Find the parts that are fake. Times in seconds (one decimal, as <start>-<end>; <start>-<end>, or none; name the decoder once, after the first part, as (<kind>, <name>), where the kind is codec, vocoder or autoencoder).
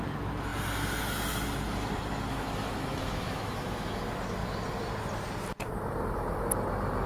2.3-4.0 (autoencoder, DAC-VAE)